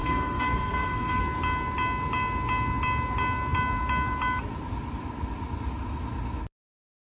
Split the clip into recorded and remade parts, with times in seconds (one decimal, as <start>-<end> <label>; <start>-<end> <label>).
0.0-1.2 remade; 1.2-7.2 recorded